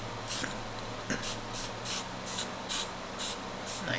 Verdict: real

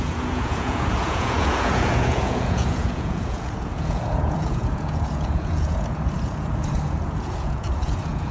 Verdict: fake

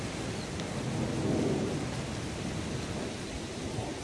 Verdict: real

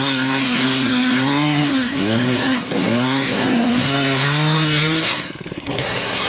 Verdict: fake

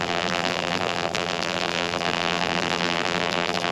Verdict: fake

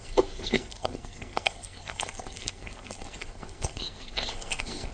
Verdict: fake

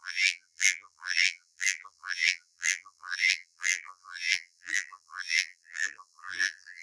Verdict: fake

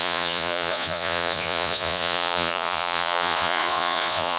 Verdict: fake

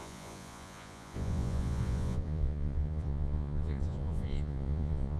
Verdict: fake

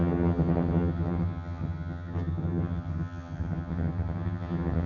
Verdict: fake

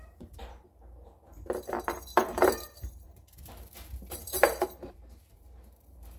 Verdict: fake